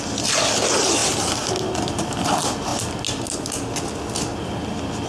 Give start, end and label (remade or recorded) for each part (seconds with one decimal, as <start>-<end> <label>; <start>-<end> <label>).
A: 0.0-5.1 recorded